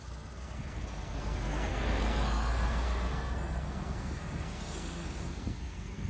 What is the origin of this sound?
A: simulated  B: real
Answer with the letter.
A